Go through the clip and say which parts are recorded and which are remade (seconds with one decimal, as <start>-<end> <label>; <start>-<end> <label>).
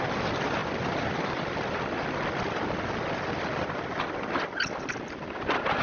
0.0-5.8 recorded